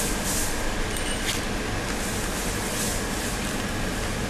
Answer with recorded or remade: recorded